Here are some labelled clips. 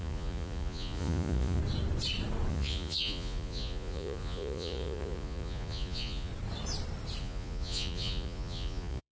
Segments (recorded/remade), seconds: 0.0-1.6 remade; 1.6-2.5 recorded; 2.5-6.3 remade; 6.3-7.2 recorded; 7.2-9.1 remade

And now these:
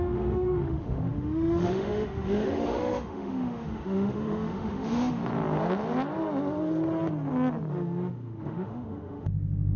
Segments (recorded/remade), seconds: 0.0-5.2 remade; 5.2-7.7 recorded; 7.7-9.8 remade

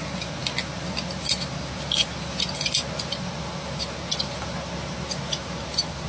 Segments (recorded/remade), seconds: 0.0-6.1 recorded

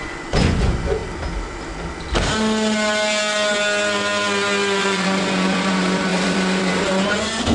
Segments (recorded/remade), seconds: 0.0-1.0 remade; 1.0-4.8 recorded; 4.8-7.5 remade

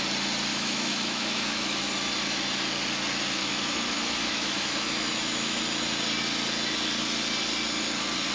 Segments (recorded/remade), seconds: 0.0-0.5 recorded; 0.5-1.8 remade; 1.8-3.4 recorded; 3.4-5.6 remade; 5.6-8.3 recorded

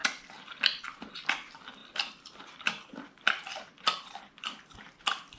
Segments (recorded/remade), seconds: 0.0-1.8 recorded; 1.8-5.0 remade; 5.0-5.4 recorded

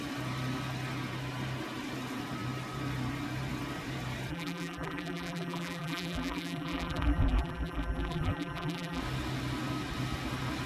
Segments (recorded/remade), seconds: 0.0-4.3 recorded; 4.3-9.0 remade; 9.0-10.7 recorded